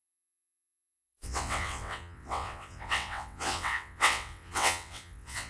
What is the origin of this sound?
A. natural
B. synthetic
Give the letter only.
B